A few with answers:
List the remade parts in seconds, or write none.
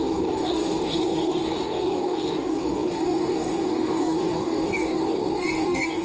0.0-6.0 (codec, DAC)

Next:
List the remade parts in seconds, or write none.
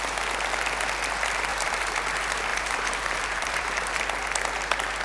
1.5-2.0 (vocoder, BigVGAN v2); 2.5-4.0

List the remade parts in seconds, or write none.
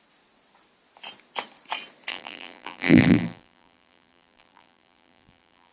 2.1-5.7 (vocoder, BigVGAN v2)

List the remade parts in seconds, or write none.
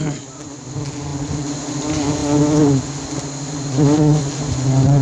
none